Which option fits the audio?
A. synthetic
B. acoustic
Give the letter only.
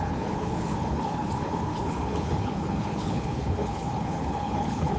A